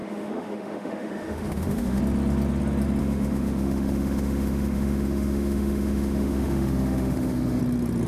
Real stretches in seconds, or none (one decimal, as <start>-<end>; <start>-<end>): 2.0-3.0; 7.6-8.1